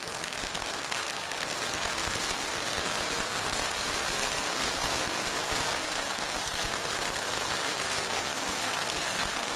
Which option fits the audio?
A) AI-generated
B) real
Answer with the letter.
A